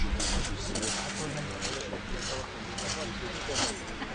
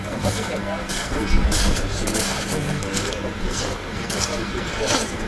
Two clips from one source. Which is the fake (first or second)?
second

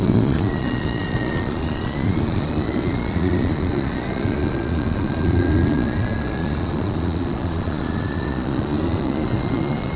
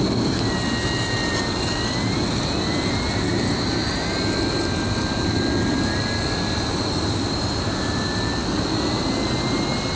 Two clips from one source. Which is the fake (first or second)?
first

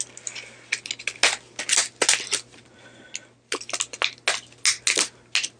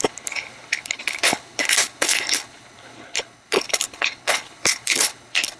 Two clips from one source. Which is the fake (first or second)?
second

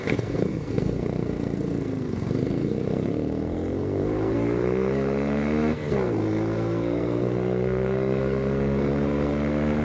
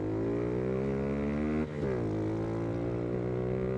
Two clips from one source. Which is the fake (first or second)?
first